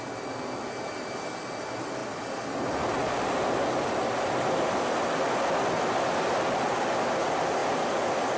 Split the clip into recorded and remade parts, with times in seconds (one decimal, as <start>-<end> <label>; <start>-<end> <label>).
0.0-8.4 recorded